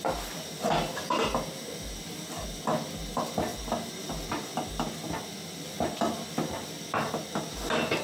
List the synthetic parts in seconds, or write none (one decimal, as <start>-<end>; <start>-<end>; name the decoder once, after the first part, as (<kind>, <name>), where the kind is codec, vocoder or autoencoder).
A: none